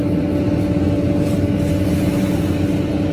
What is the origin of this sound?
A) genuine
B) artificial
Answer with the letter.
A